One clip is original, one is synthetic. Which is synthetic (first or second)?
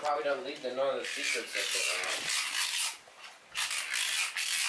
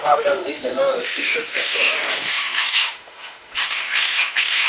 second